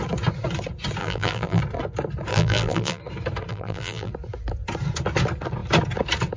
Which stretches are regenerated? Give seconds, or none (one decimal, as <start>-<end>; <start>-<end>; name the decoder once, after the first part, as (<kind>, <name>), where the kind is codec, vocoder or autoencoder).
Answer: 1.0-1.6 (vocoder, BigVGAN v2); 2.3-3.0; 3.5-4.1